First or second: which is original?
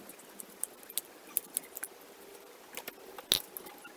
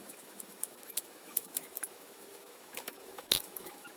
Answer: first